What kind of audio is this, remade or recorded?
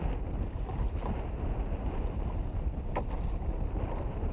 recorded